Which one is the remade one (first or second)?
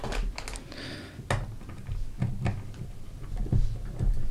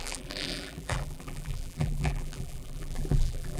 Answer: second